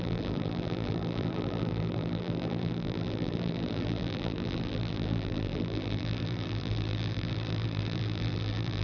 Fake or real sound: fake